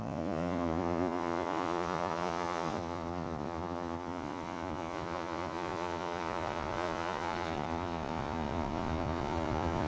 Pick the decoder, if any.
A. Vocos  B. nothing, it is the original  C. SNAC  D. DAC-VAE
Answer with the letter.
A